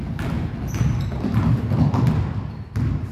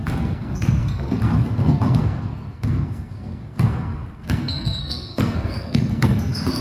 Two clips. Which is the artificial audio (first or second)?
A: second